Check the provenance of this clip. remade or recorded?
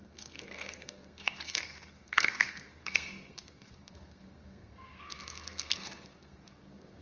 remade